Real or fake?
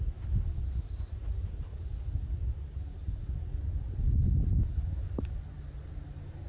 real